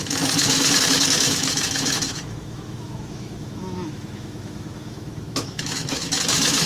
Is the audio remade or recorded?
remade